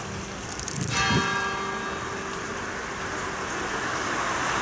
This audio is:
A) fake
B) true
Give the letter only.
B